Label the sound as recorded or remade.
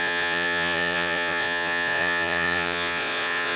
remade